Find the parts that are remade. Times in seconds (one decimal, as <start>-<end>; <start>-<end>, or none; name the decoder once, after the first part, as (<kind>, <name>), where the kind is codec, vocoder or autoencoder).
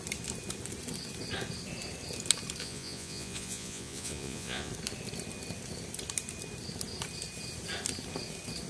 2.6-4.7 (vocoder, Vocos)